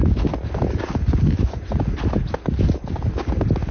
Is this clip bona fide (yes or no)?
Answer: yes